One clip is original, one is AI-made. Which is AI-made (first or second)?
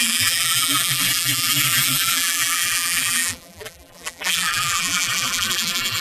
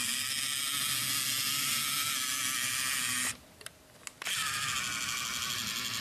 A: first